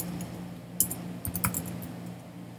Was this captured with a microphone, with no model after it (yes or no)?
yes